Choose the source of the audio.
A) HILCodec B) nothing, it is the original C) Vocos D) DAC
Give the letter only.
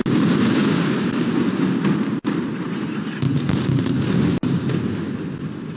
B